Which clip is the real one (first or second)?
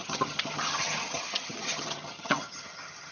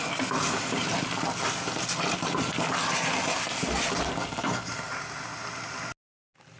second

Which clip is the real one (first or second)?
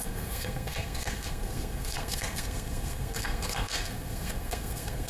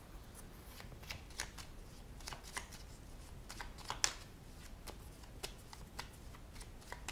second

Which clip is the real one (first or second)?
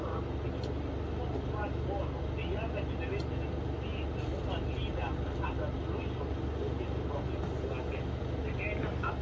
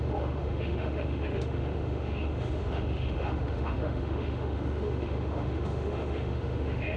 first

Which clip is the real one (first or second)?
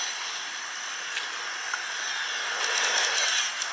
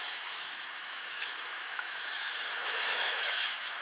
first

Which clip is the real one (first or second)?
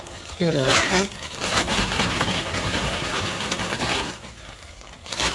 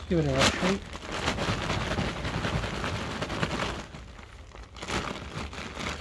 second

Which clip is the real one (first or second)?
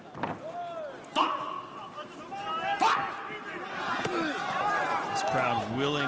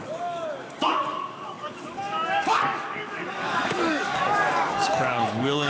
first